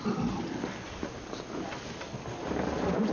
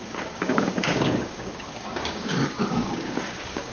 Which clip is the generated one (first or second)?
second